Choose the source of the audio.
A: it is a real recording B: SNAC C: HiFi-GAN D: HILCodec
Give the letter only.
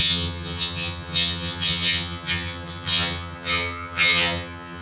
C